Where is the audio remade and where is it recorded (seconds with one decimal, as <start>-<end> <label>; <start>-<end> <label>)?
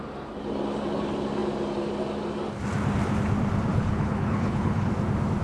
0.0-3.7 recorded; 3.7-4.9 remade; 4.9-5.4 recorded